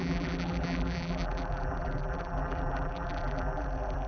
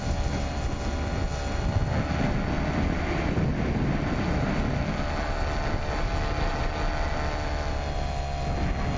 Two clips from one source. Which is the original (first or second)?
second